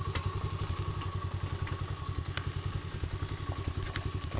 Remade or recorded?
recorded